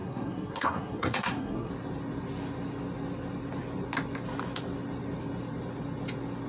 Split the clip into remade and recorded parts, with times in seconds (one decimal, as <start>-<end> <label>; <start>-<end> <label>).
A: 0.0-1.7 remade; 1.7-6.5 recorded